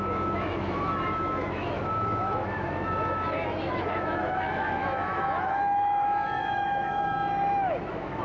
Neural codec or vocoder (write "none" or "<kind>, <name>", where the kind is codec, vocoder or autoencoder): autoencoder, DAC-VAE